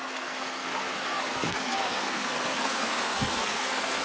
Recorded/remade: remade